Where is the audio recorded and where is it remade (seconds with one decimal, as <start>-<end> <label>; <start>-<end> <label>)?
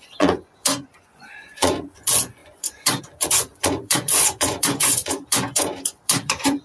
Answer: 0.0-6.6 remade